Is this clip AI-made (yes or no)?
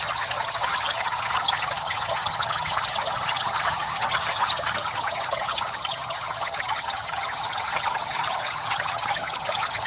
yes